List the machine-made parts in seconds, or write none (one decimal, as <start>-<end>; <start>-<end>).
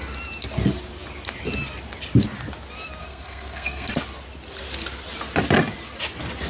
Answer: 3.0-3.9